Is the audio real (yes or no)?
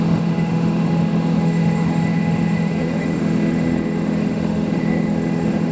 no